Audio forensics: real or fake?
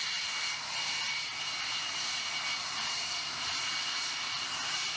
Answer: real